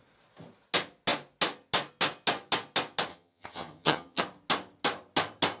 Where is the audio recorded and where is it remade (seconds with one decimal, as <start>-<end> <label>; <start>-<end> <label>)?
0.0-3.1 recorded; 3.1-4.2 remade; 4.2-5.6 recorded